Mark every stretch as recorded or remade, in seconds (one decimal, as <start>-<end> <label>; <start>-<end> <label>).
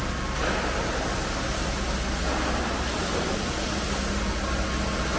0.0-5.2 recorded